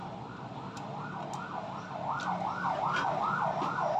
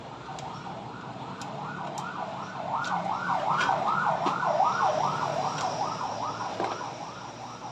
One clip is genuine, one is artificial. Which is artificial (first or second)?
second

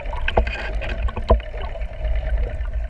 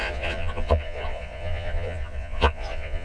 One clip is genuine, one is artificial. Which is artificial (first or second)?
second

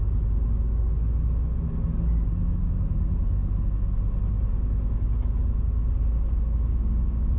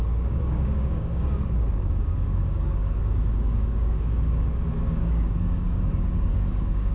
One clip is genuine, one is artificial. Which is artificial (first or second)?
second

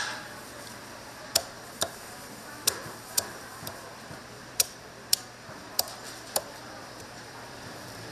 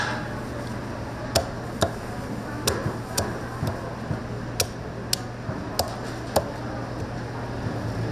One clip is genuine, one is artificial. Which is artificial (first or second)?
first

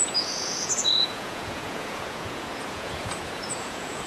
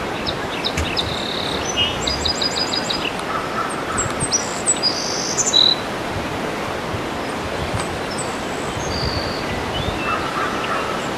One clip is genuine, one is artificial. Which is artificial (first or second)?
first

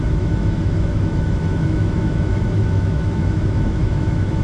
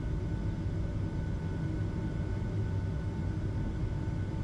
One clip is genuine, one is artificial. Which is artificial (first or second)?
first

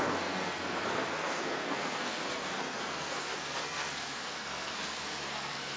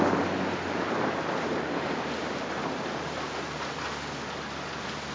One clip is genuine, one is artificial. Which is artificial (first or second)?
first